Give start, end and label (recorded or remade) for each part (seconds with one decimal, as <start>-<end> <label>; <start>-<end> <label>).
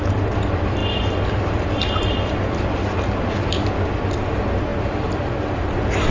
0.0-6.1 recorded